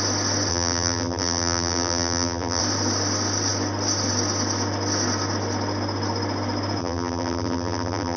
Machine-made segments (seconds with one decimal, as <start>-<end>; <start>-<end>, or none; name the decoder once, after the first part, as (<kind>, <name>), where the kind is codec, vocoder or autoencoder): 0.5-2.6 (vocoder, BigVGAN v2); 6.8-8.2